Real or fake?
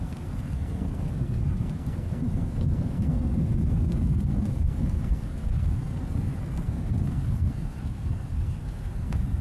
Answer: fake